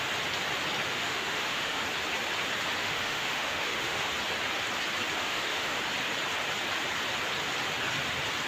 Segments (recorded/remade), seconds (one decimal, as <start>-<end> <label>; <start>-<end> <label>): 0.0-0.9 recorded; 0.9-1.8 remade; 1.8-2.8 recorded; 2.8-4.1 remade; 4.1-5.2 recorded; 5.2-5.8 remade; 5.8-8.5 recorded